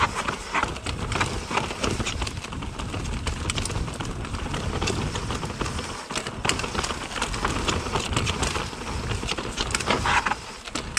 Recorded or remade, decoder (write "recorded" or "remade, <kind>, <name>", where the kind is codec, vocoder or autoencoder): recorded